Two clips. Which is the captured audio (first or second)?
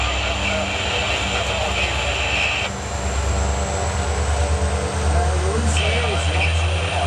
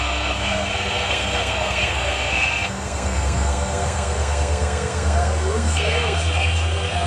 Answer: first